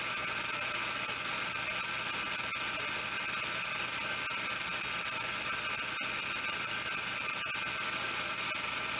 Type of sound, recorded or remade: recorded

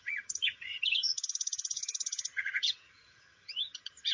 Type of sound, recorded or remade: remade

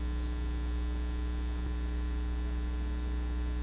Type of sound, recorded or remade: recorded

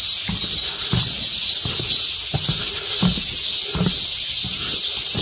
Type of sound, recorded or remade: recorded